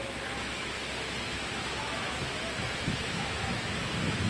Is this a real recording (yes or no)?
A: no